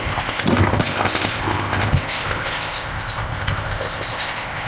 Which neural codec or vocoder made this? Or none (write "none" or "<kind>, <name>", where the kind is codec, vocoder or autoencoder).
codec, ZipCodec